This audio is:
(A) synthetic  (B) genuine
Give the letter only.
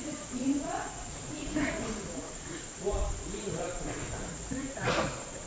A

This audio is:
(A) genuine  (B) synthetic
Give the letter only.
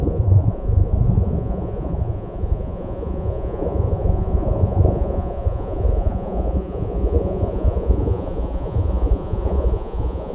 B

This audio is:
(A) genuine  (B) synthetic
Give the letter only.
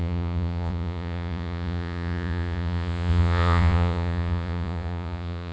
B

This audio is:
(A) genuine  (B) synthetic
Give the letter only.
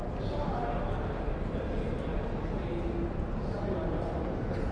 A